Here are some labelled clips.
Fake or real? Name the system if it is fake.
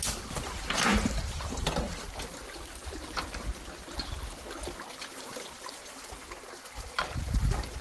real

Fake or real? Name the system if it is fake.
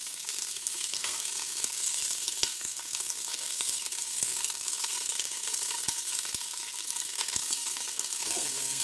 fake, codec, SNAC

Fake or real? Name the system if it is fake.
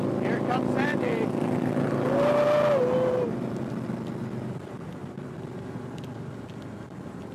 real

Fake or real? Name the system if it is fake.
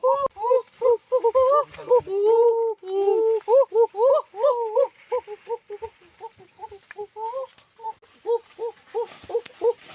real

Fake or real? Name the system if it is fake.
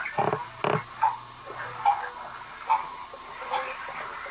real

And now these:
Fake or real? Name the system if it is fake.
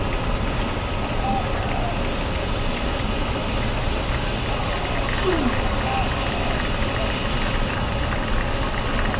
real